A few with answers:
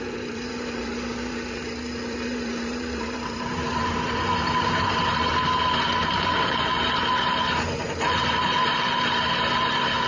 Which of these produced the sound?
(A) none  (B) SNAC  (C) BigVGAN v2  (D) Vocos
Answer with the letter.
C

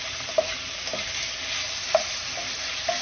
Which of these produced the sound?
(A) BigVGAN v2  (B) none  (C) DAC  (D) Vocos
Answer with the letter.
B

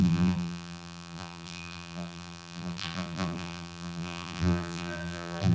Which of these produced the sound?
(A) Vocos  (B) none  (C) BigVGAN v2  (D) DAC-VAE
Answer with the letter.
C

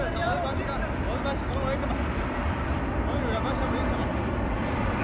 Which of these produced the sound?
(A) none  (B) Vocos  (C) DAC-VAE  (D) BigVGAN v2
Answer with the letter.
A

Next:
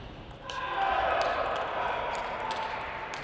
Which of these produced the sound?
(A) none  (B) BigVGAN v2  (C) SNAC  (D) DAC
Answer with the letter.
A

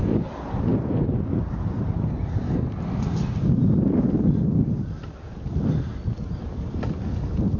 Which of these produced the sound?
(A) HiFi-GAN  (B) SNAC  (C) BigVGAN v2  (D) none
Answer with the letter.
D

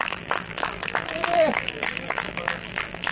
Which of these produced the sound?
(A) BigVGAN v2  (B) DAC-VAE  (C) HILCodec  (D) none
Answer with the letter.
A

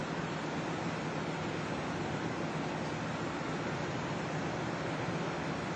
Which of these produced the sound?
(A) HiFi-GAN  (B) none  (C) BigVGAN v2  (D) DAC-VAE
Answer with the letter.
B